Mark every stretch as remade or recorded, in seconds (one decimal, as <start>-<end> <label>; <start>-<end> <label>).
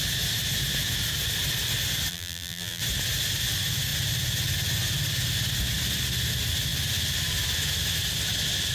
0.0-2.1 recorded; 2.1-2.8 remade; 2.8-8.7 recorded